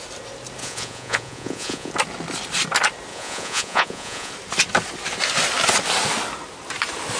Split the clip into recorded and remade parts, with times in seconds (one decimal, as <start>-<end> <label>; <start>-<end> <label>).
0.0-0.6 recorded; 0.6-1.9 remade; 1.9-3.1 recorded; 3.1-4.3 remade; 4.3-7.2 recorded